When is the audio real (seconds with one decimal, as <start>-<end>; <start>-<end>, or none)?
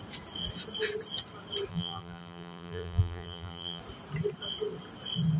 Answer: 0.0-1.7; 3.8-5.4